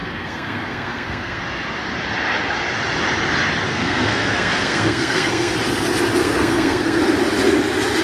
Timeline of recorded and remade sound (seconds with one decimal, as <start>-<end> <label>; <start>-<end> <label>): 0.0-1.4 remade; 1.4-3.7 recorded; 3.7-5.5 remade; 5.5-6.2 recorded; 6.2-7.0 remade; 7.0-8.0 recorded